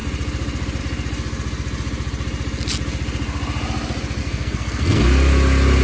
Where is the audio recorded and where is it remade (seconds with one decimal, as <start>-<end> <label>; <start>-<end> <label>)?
0.0-4.2 recorded; 4.2-5.0 remade; 5.0-5.8 recorded